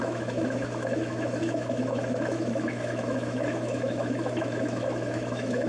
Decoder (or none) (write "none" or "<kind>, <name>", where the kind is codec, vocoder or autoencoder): autoencoder, DAC-VAE